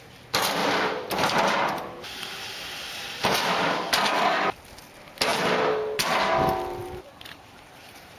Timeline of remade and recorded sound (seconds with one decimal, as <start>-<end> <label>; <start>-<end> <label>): 0.0-0.6 recorded; 0.6-3.7 remade; 3.7-5.3 recorded; 5.3-6.3 remade; 6.3-6.8 recorded; 6.8-8.2 remade

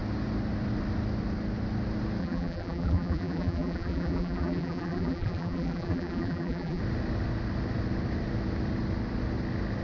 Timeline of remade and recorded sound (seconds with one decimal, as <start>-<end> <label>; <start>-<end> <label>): 0.0-2.2 recorded; 2.2-6.8 remade; 6.8-9.8 recorded

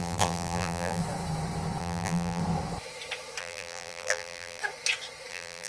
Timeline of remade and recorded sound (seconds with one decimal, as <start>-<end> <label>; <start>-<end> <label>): 0.0-1.0 remade; 1.0-1.8 recorded; 1.8-2.4 remade; 2.4-3.4 recorded; 3.4-4.6 remade; 4.6-5.3 recorded; 5.3-5.7 remade

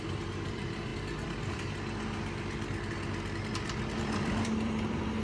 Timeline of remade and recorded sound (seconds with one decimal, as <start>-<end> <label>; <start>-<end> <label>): 0.0-0.9 remade; 0.9-4.0 recorded; 4.0-5.2 remade

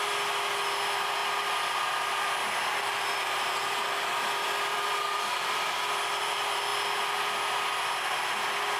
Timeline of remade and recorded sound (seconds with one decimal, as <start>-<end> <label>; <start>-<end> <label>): 0.0-1.2 remade; 1.2-2.8 recorded; 2.8-8.8 remade

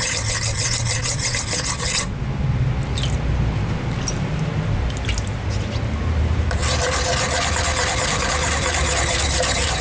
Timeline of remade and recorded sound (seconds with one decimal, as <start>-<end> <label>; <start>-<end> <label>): 0.0-1.0 remade; 1.0-6.0 recorded; 6.0-6.6 remade; 6.6-8.2 recorded; 8.2-9.8 remade

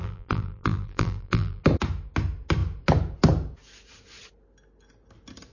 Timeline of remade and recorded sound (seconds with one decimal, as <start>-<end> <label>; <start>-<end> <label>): 0.0-1.6 remade; 1.6-5.5 recorded